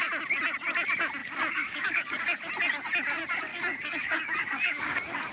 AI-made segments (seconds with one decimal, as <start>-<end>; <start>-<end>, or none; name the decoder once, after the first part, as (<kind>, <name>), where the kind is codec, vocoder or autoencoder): 1.2-2.5 (codec, DAC); 3.5-5.3